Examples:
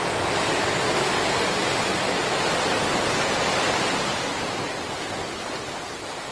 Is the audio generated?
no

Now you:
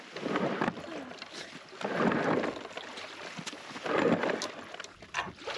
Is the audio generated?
no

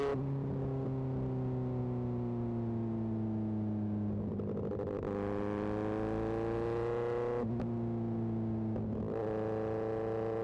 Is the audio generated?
no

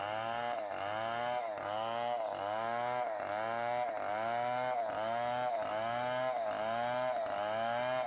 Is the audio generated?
no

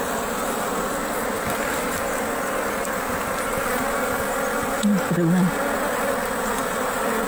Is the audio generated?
no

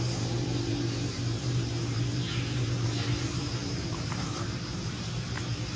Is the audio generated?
yes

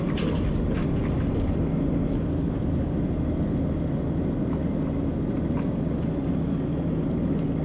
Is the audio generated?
no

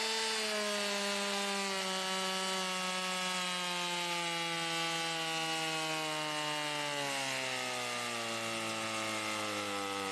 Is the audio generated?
no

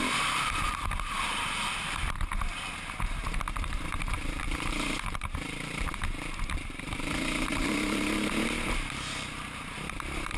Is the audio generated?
yes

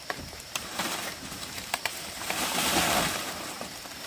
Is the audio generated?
yes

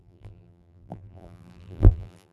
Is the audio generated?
yes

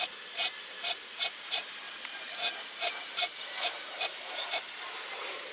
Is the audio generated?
yes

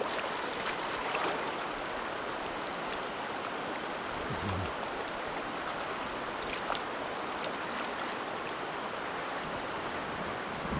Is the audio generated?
yes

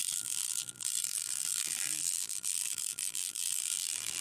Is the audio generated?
yes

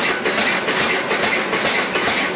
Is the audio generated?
no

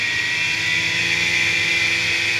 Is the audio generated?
no